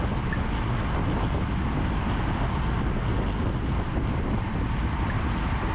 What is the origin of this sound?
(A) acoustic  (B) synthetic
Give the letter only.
A